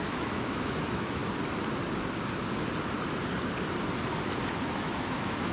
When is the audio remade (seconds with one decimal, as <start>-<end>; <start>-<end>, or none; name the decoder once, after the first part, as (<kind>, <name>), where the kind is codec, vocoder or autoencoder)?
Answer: 0.0-1.2 (autoencoder, DAC-VAE); 4.5-5.5